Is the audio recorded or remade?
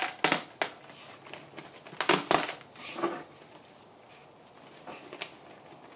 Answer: recorded